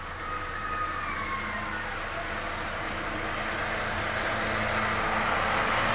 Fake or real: real